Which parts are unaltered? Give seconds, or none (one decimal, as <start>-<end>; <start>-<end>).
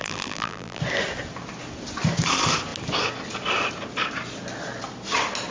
0.8-5.5